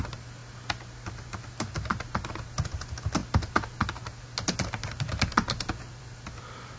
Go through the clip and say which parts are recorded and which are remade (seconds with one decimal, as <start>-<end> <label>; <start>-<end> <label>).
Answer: 0.0-6.8 recorded